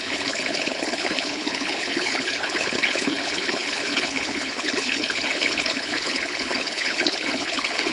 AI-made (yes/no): yes